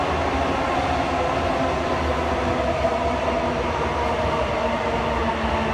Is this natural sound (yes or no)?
yes